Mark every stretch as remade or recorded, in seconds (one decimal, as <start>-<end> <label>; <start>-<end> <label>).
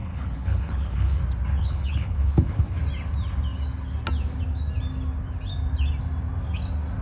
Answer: 0.0-1.2 remade; 1.2-1.6 recorded; 1.6-2.8 remade; 2.8-7.0 recorded